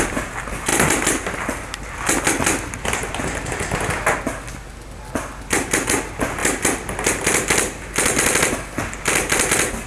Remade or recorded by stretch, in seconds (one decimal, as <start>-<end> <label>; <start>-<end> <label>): 0.0-9.9 recorded